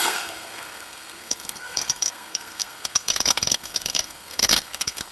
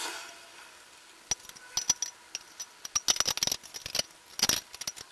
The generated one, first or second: first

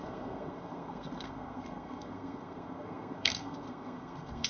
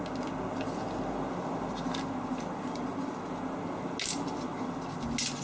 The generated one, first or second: first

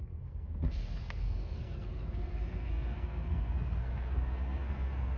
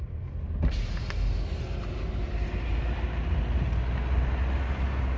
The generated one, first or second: first